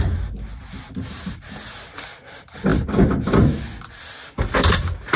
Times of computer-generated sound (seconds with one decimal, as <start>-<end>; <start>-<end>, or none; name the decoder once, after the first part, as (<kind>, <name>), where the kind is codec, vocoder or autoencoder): none

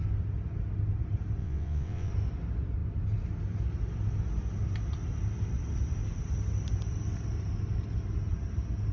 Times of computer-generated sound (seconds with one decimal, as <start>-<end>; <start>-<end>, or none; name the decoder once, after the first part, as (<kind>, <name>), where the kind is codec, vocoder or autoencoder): 1.4-2.1 (vocoder, WaveNeXt)

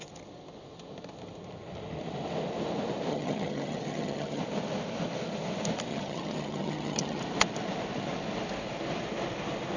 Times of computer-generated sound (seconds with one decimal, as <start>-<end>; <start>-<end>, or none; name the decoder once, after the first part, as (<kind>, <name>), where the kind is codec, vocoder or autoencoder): 3.1-4.4 (vocoder, HiFi-GAN); 5.9-7.2

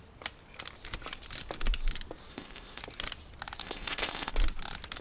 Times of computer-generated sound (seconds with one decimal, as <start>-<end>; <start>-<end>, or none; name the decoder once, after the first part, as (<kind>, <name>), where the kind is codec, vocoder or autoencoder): 2.3-2.8 (codec, ZipCodec); 3.6-4.3

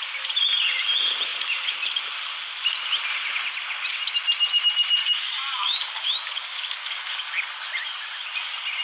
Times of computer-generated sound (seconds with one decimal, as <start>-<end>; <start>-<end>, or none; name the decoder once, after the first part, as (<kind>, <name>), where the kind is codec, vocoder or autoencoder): 5.0-7.3 (codec, DAC)

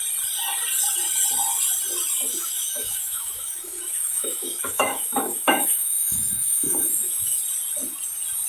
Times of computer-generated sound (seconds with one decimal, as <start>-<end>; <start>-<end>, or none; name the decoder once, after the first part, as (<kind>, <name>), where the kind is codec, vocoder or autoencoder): 2.3-7.4 (autoencoder, DAC-VAE)